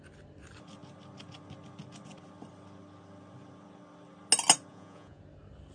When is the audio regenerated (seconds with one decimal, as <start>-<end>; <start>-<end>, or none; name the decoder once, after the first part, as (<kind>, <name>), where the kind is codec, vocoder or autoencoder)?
4.7-5.2 (vocoder, Vocos)